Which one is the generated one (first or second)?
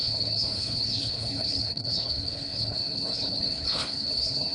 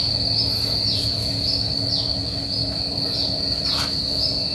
first